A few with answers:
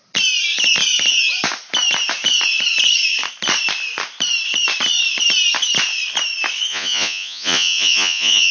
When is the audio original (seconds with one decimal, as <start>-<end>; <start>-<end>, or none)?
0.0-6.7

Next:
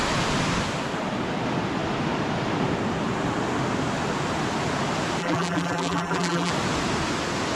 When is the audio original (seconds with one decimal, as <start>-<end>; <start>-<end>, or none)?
0.0-5.2; 6.5-7.6

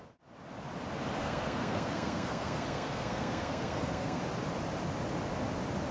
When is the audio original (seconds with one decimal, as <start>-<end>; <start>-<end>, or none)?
0.0-1.2; 4.2-5.9